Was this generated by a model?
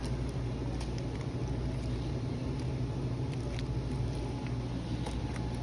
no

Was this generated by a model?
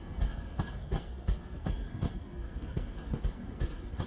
yes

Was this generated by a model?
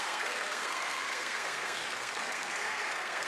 yes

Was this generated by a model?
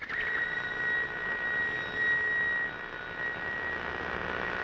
no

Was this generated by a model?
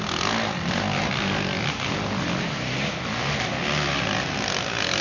no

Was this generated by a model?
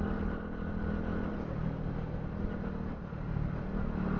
no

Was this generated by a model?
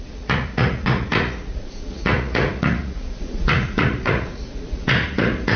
yes